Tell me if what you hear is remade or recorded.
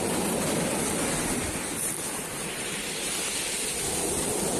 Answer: recorded